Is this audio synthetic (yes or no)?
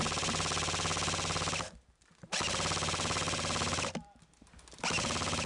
no